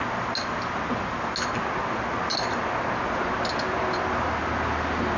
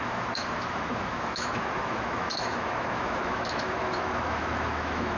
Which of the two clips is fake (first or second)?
second